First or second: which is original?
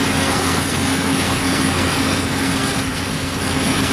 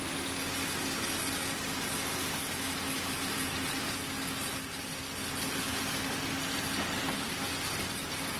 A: second